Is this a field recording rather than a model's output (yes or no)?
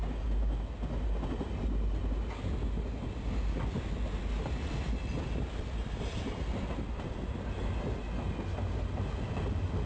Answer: yes